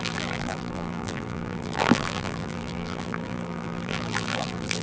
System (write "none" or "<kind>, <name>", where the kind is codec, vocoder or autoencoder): vocoder, BigVGAN v2